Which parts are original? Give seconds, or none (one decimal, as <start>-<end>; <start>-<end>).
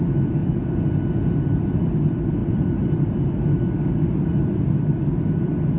0.0-2.4; 2.9-5.8